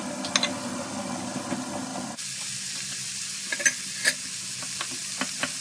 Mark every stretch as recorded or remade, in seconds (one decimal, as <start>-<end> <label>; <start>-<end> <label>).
0.0-5.6 recorded